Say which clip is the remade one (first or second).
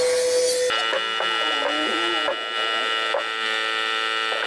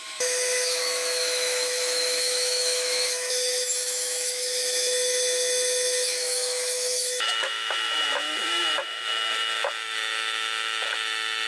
second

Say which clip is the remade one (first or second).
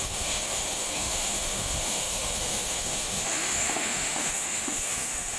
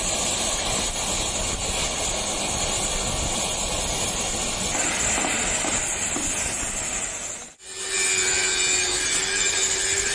first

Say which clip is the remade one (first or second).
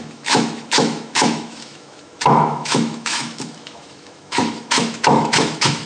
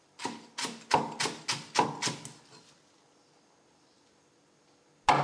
first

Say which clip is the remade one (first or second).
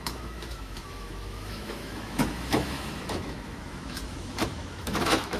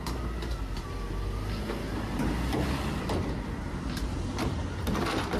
first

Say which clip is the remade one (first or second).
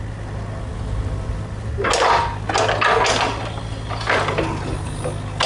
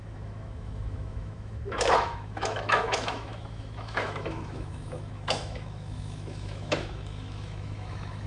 second